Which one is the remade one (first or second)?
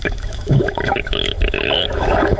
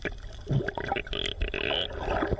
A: first